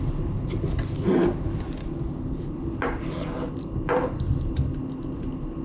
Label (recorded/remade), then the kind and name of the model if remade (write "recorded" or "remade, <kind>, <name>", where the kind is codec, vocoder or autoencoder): recorded